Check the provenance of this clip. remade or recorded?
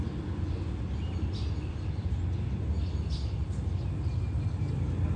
recorded